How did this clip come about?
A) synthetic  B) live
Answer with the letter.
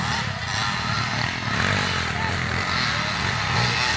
B